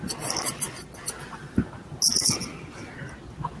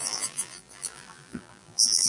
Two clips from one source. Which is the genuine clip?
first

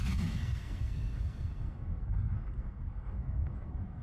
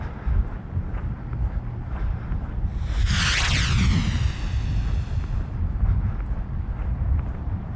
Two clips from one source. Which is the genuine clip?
second